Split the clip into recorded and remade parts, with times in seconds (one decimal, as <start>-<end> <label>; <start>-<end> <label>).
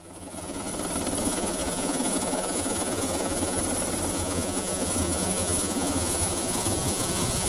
0.0-0.7 remade; 0.7-1.2 recorded; 1.2-3.6 remade; 3.6-4.1 recorded; 4.1-7.5 remade